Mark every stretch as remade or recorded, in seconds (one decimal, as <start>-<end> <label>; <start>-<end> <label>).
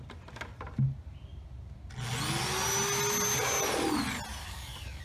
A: 0.0-4.4 recorded; 4.4-5.0 remade